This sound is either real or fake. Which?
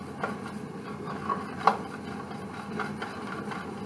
real